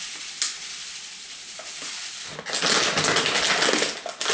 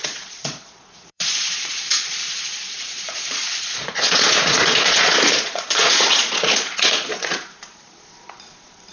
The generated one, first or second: second